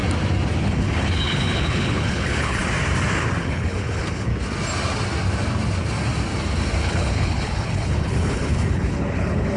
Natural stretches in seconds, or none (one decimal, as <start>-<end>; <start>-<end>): 0.0-0.6; 2.6-3.4; 4.3-6.8